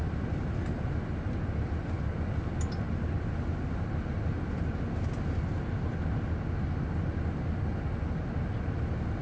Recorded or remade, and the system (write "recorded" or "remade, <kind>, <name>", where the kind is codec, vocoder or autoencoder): recorded